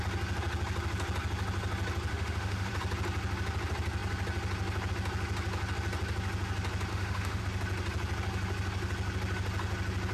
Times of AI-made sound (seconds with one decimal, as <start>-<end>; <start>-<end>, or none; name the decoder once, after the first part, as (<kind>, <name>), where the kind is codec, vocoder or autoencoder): 2.1-2.7 (autoencoder, DAC-VAE); 6.9-7.4